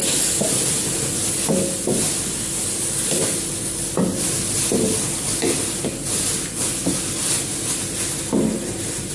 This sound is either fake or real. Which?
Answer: real